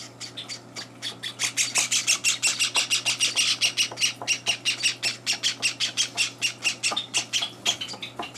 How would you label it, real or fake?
real